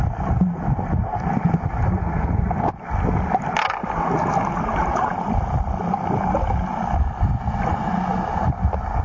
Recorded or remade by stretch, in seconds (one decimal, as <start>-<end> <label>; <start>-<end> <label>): 0.0-4.8 recorded; 4.8-5.3 remade; 5.3-9.0 recorded